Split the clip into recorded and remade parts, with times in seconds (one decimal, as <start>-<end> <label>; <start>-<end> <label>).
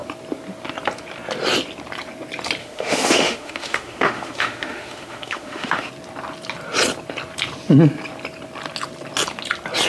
0.0-2.6 recorded; 2.6-5.9 remade; 5.9-9.9 recorded